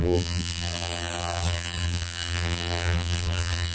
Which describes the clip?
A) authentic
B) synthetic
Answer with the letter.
B